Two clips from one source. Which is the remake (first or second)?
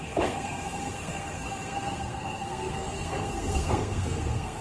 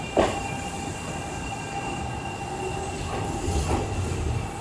first